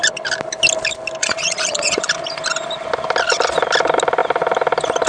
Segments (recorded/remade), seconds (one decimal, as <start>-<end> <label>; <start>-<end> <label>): 0.0-1.2 recorded; 1.2-2.1 remade; 2.1-5.1 recorded